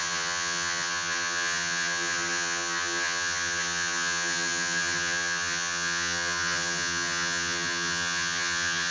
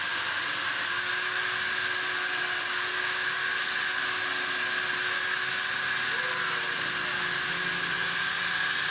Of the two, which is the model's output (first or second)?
first